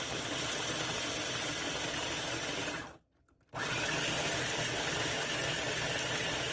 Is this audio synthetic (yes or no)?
no